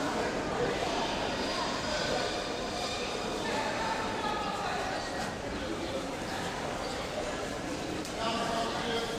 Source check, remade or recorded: remade